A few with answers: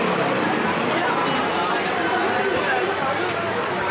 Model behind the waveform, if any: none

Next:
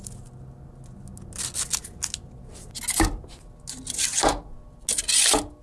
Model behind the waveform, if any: none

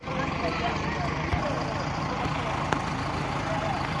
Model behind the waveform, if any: none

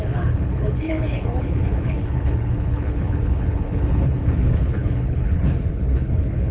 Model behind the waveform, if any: codec, HILCodec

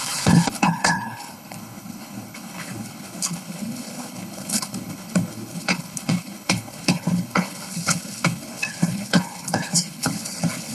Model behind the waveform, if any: codec, HILCodec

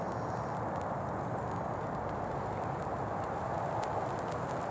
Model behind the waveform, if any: none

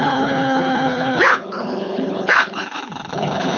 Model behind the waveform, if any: codec, HILCodec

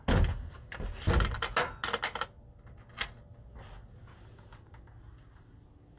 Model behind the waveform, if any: none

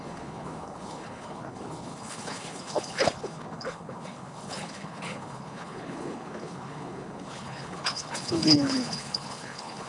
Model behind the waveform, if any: codec, HILCodec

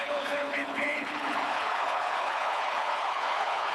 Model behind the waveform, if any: codec, HILCodec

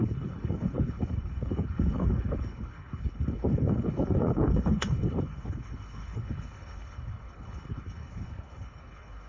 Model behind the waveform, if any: codec, HILCodec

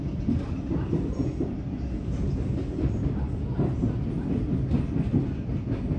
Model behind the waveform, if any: none